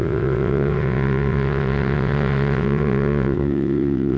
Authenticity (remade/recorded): remade